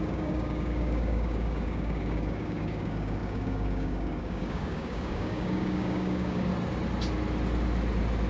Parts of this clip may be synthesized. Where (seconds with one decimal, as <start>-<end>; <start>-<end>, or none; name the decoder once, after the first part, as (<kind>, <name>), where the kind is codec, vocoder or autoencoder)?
0.0-6.5 (codec, DAC)